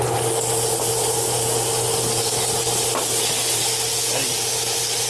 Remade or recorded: recorded